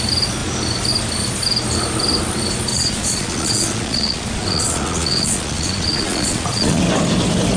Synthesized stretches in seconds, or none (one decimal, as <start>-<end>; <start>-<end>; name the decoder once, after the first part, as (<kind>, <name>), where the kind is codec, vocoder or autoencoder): 2.7-6.8 (vocoder, Vocos)